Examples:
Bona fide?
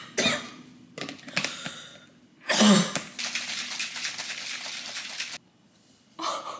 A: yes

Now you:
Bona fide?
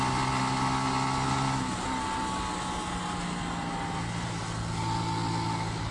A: yes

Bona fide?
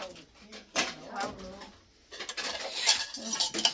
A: yes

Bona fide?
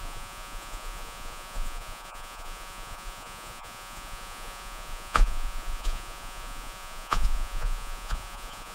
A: no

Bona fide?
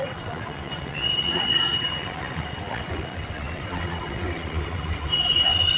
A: no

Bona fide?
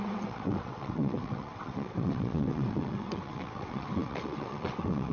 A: no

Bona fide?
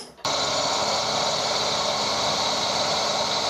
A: no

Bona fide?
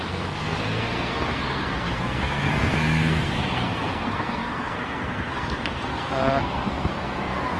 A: no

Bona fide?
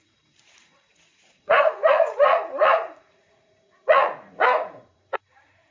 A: no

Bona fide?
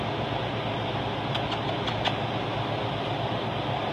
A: yes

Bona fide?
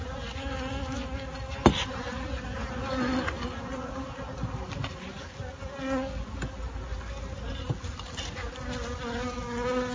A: yes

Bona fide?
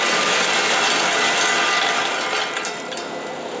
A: yes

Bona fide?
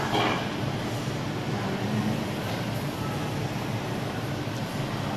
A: yes